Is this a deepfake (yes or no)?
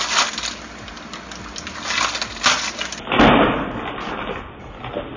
no